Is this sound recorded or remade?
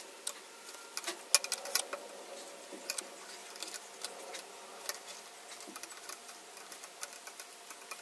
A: recorded